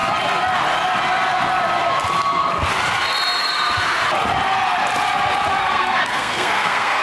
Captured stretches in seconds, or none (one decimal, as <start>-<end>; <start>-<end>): 0.0-5.6